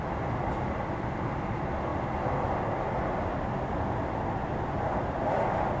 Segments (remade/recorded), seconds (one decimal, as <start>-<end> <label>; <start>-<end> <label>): 0.0-5.8 recorded